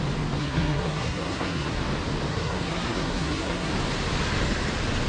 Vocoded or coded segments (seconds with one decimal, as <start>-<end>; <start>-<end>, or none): 0.4-1.8; 2.3-3.7